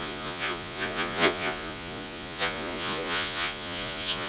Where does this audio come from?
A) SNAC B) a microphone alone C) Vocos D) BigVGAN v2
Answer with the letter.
C